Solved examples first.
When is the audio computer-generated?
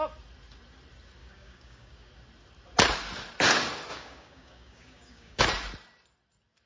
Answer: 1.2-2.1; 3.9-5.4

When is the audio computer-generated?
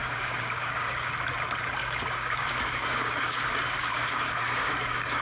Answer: 0.0-1.1; 1.8-5.2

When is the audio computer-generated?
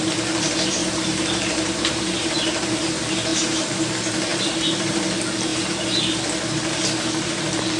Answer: 0.8-2.7; 3.3-3.9; 4.3-5.0; 5.5-6.2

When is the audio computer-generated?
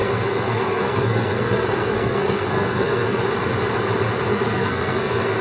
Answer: 0.0-3.2; 4.3-5.4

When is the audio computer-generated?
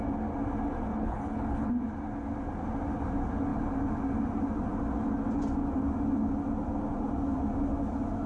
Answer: 0.9-1.7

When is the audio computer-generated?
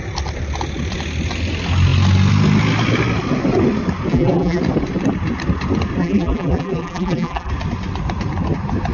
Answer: 4.1-4.6; 6.0-7.5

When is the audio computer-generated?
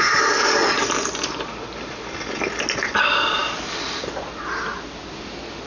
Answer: none